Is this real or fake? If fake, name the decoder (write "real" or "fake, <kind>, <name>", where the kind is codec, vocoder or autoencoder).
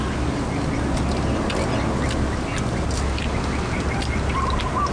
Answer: real